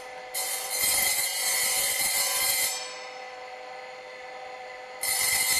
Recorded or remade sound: remade